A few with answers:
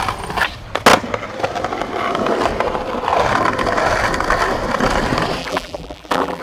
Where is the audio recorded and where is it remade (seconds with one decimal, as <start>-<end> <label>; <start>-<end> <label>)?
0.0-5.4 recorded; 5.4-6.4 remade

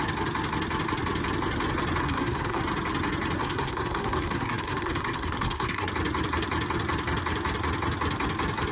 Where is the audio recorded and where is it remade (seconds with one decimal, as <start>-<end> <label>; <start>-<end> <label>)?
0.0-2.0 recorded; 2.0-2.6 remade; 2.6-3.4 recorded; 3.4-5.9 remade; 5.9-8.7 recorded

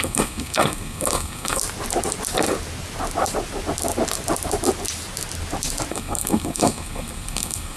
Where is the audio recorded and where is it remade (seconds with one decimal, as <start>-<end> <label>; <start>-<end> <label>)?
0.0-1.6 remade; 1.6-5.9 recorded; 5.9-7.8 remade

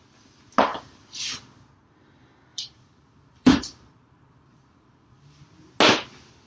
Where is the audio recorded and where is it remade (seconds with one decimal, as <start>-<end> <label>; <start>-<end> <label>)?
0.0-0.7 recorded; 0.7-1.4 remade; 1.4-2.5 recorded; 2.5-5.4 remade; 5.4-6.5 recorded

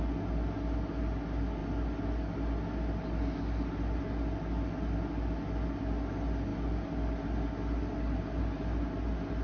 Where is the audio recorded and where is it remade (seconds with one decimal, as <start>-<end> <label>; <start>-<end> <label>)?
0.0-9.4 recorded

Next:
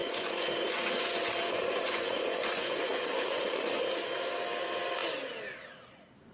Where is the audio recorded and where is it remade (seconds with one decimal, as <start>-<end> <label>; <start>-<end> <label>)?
0.0-3.8 remade; 3.8-6.3 recorded

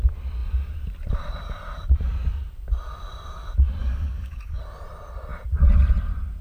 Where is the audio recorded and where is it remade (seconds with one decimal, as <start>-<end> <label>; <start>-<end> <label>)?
0.0-3.8 recorded; 3.8-4.6 remade; 4.6-6.4 recorded

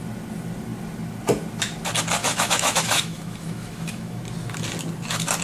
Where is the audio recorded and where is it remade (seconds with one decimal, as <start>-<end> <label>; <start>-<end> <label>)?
0.0-2.2 recorded; 2.2-4.2 remade; 4.2-5.4 recorded